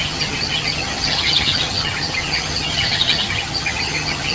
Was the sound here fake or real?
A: fake